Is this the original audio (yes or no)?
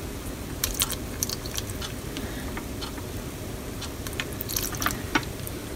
no